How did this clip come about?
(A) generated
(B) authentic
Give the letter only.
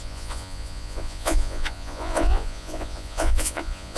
A